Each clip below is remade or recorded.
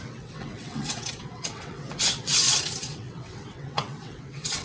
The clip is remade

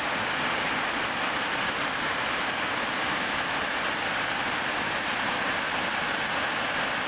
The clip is recorded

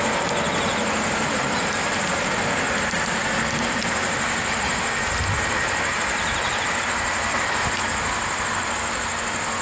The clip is recorded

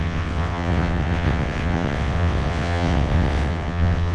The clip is remade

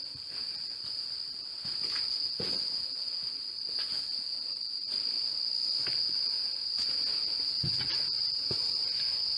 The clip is recorded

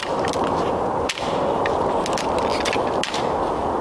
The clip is recorded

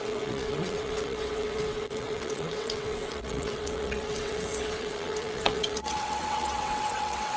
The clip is remade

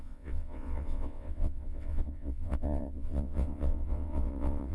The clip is remade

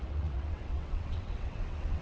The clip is remade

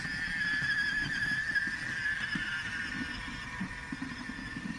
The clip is recorded